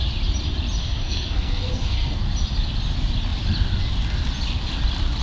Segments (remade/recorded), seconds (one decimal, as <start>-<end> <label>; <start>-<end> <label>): 0.0-0.8 recorded; 0.8-2.2 remade; 2.2-5.2 recorded